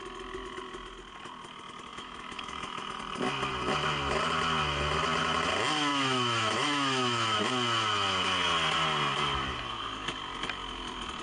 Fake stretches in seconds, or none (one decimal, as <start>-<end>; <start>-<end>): 1.9-3.0; 5.9-7.5